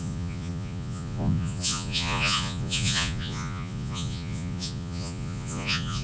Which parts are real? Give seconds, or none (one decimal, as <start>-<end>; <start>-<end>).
none